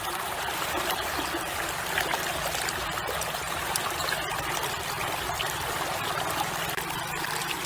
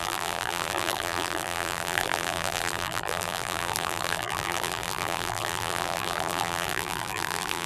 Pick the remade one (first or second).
second